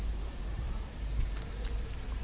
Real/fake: fake